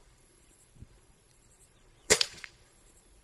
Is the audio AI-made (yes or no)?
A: yes